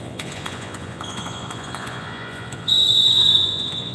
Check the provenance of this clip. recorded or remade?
remade